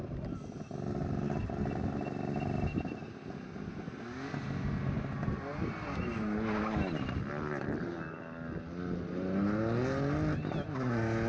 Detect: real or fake real